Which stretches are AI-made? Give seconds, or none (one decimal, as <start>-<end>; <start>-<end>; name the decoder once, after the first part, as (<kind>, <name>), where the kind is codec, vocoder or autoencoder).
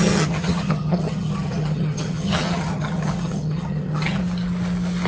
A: 0.0-4.2 (vocoder, HiFi-GAN)